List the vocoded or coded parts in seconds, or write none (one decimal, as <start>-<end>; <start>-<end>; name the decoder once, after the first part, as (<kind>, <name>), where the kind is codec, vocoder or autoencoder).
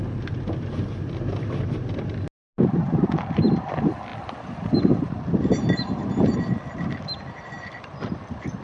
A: none